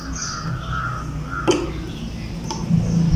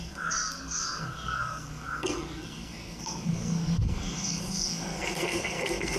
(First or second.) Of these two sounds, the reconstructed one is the second